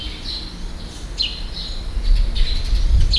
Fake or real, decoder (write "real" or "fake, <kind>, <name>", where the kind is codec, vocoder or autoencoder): real